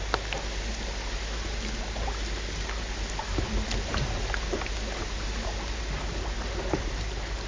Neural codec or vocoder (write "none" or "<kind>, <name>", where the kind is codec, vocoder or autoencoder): none